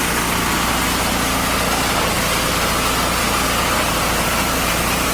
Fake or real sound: real